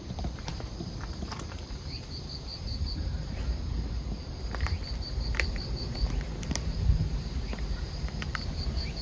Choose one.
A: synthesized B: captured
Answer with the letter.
A